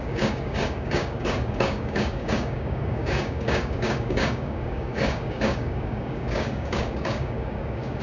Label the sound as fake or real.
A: fake